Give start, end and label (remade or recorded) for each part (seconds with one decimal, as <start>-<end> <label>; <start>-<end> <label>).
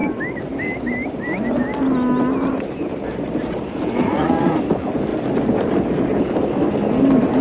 0.0-4.0 recorded; 4.0-4.6 remade; 4.6-7.4 recorded